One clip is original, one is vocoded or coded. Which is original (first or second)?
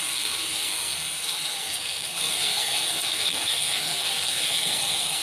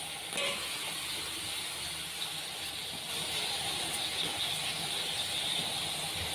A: second